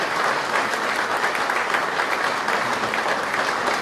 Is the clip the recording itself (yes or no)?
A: yes